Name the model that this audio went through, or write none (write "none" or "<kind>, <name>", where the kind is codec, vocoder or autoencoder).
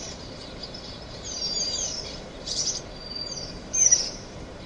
vocoder, BigVGAN v2